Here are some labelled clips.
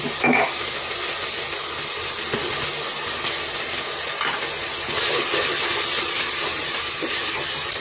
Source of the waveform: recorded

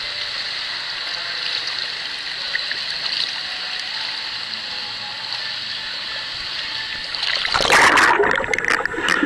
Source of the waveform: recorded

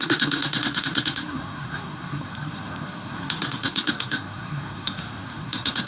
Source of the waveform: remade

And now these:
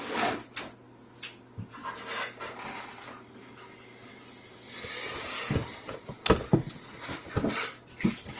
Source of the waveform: recorded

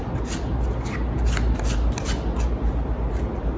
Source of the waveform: recorded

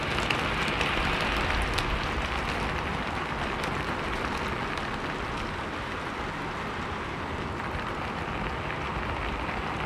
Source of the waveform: recorded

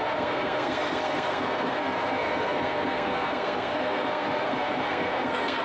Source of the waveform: remade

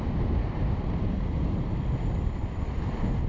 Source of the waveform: recorded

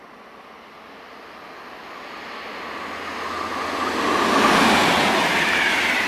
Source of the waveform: recorded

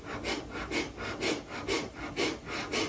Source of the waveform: recorded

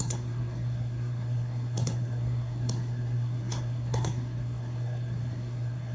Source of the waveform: remade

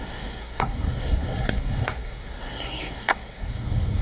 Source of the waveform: remade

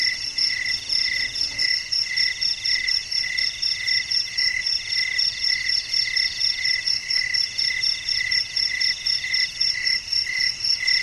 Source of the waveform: recorded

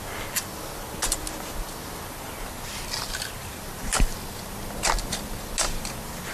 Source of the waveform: recorded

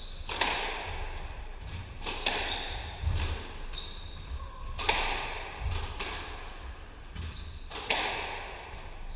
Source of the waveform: recorded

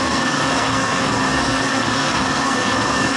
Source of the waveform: remade